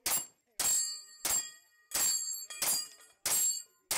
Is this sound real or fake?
real